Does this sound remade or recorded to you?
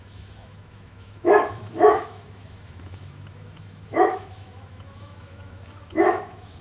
remade